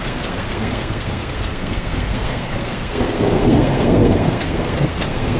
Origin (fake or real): fake